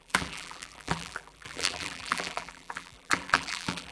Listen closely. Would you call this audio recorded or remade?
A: remade